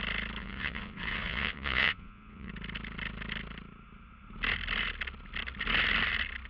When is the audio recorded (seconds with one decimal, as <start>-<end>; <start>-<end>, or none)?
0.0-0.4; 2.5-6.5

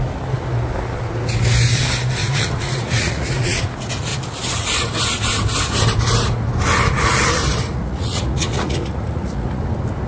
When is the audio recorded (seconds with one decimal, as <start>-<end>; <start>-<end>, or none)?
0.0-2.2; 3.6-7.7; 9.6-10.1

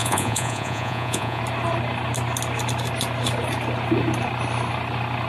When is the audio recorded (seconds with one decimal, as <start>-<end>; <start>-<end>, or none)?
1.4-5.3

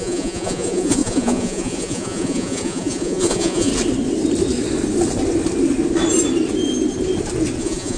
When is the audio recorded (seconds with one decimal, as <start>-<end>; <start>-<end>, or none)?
3.7-7.6

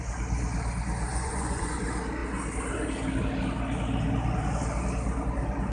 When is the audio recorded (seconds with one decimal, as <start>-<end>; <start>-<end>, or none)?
0.0-1.1; 1.8-5.7